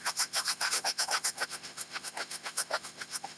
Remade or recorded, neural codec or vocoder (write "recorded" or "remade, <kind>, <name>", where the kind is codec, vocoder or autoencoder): remade, autoencoder, DAC-VAE